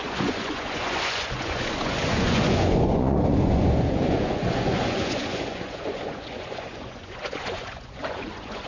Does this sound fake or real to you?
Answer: fake